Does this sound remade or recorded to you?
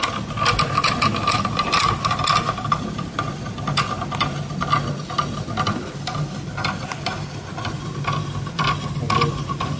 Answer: recorded